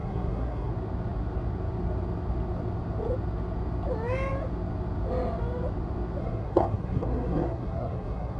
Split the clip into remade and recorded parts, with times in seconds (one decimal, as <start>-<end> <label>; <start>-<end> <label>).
0.0-0.7 remade; 0.7-6.2 recorded; 6.2-8.4 remade